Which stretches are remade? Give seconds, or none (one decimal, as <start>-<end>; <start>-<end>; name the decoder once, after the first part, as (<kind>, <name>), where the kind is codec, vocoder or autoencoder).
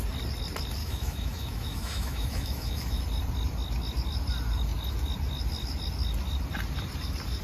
0.8-3.0 (autoencoder, DAC-VAE)